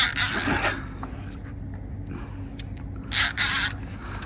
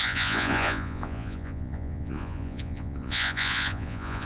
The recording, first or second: first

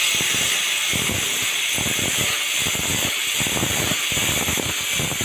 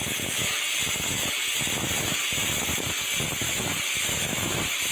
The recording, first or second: second